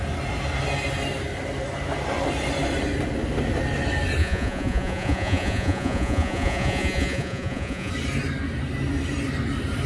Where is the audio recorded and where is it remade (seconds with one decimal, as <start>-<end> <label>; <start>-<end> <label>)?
0.0-4.2 recorded; 4.2-7.9 remade; 7.9-9.9 recorded